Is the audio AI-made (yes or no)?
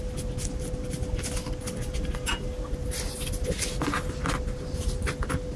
no